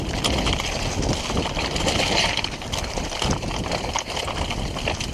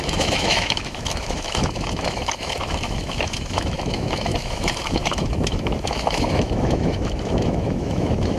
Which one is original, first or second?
first